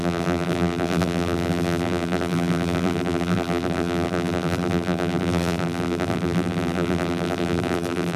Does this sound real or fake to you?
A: fake